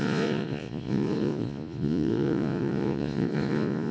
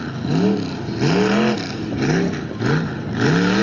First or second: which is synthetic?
first